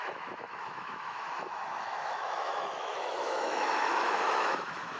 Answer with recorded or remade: remade